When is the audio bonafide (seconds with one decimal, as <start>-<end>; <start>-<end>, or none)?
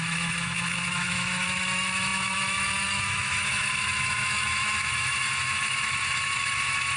none